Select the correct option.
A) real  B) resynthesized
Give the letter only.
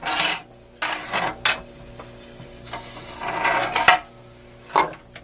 A